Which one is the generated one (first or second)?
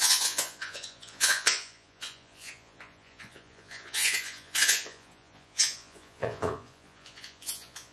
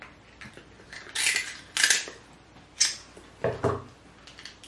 first